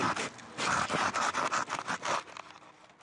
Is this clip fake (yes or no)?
no